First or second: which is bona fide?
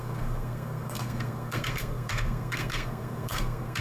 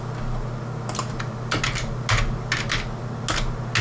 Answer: second